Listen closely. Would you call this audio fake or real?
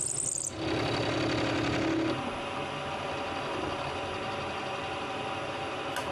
real